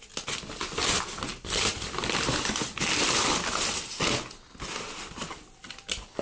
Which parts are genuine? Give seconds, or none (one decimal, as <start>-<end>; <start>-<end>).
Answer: 0.0-6.2